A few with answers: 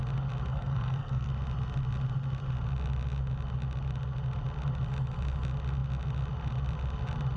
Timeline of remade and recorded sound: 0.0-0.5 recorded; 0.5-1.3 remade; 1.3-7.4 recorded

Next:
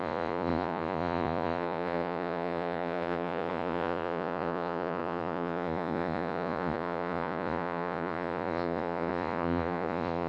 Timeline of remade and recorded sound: 0.0-10.3 remade

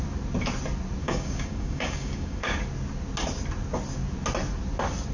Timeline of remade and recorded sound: 0.0-1.0 recorded; 1.0-2.6 remade; 2.6-5.1 recorded

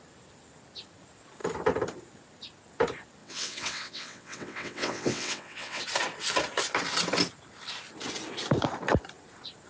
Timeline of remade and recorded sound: 0.0-3.2 recorded; 3.2-5.8 remade; 5.8-9.7 recorded

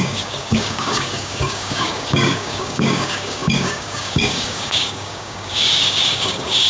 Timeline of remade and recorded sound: 0.0-6.7 remade

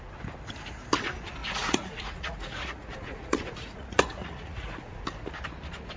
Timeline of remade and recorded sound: 0.0-1.4 recorded; 1.4-5.0 remade; 5.0-6.0 recorded

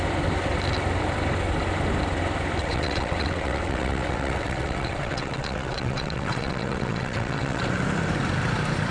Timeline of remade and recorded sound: 0.0-2.6 recorded; 2.6-7.6 remade; 7.6-8.9 recorded

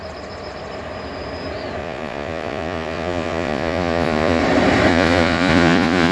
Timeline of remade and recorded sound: 0.0-1.8 recorded; 1.8-4.4 remade; 4.4-4.9 recorded; 4.9-6.1 remade